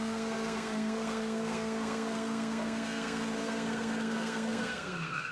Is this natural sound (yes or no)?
no